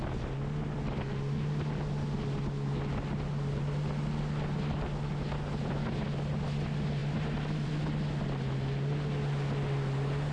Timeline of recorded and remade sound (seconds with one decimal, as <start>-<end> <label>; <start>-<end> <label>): 0.0-7.0 recorded; 7.0-7.7 remade; 7.7-10.3 recorded